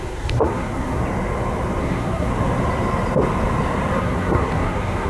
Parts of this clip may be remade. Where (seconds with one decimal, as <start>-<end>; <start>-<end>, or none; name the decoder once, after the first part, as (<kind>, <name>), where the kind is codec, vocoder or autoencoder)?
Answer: 0.0-1.0 (codec, SNAC); 1.8-2.3; 4.0-5.1